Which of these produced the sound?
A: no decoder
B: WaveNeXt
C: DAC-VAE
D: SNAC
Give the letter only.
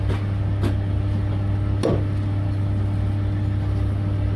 A